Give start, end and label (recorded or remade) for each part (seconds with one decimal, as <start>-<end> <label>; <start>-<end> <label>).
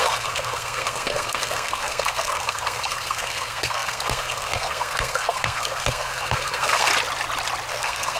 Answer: 0.0-6.9 remade; 6.9-7.7 recorded; 7.7-8.2 remade